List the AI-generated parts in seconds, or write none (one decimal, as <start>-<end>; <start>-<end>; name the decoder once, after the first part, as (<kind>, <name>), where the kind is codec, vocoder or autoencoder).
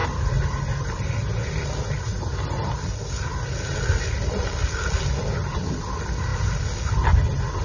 none